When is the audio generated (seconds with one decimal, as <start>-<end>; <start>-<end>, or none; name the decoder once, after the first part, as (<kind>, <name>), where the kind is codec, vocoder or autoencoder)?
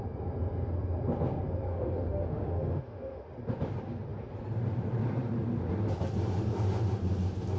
1.7-3.3 (autoencoder, DAC-VAE)